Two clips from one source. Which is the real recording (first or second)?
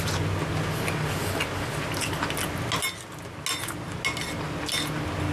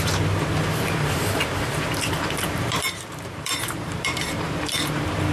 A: first